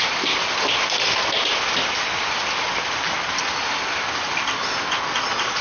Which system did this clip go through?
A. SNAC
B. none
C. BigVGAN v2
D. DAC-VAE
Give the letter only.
B